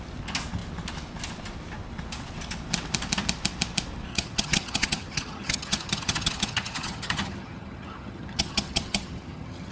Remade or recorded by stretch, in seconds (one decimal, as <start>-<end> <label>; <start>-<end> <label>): 0.0-4.1 recorded; 4.1-9.7 remade